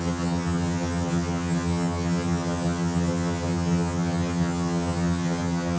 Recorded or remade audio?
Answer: remade